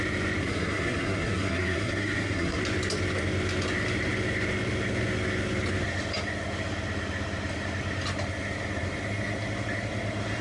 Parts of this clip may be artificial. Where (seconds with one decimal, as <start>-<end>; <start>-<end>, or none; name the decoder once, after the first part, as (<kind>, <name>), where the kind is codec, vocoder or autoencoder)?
0.4-2.6 (codec, SNAC)